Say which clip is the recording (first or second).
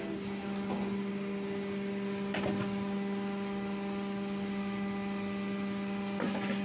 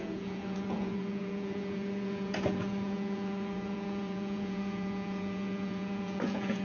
first